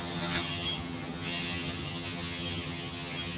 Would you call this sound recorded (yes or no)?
no